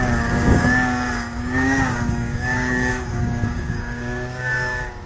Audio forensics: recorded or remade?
remade